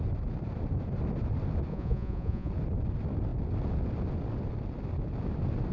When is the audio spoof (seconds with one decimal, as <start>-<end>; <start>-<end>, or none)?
1.7-2.5